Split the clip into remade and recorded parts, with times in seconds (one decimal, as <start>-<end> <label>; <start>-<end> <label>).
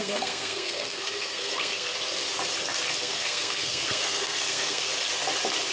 0.0-1.9 remade; 1.9-3.0 recorded; 3.0-4.9 remade; 4.9-5.7 recorded